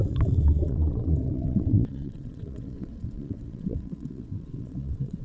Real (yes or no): no